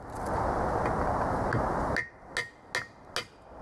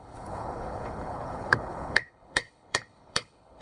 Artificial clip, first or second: second